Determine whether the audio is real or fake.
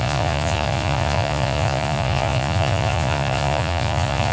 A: fake